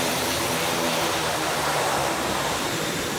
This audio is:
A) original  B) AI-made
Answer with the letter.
B